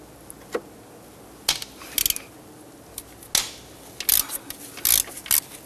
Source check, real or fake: real